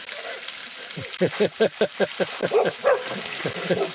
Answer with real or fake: real